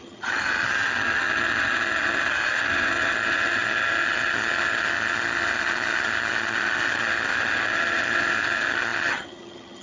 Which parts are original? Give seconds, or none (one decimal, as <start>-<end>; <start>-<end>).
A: none